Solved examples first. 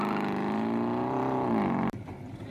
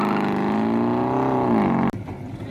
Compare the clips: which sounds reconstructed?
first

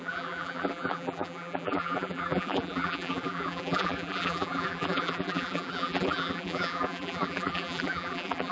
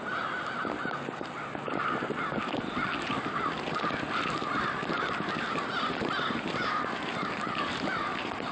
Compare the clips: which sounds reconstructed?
first